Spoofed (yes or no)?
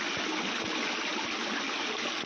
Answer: no